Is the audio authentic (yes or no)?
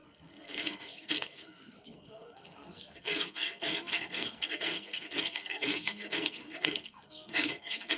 no